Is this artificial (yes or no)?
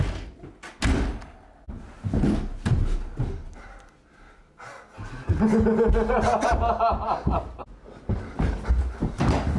no